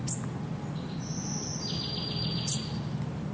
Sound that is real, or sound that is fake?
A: real